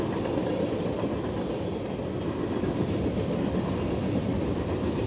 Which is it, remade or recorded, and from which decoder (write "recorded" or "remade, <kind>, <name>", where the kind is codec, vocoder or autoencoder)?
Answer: recorded